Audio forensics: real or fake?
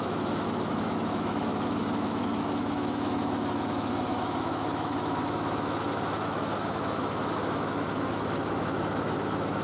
fake